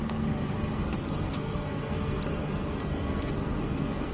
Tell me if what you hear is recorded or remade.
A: remade